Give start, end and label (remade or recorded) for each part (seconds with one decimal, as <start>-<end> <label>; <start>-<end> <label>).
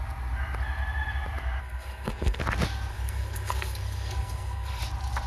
0.0-1.6 recorded; 1.6-2.4 remade; 2.4-2.9 recorded; 2.9-4.8 remade; 4.8-5.3 recorded